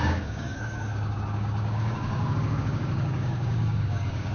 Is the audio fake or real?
fake